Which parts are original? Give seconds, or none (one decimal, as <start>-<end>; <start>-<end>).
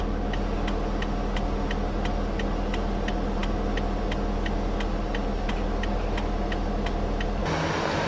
0.0-8.1